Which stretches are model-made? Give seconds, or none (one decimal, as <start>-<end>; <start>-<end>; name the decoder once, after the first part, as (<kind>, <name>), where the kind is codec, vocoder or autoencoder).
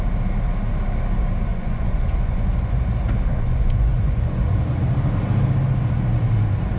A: 1.5-2.8 (vocoder, Vocos); 3.3-4.8